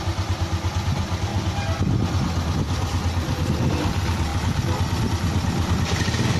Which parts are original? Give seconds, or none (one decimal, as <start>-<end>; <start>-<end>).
0.0-6.4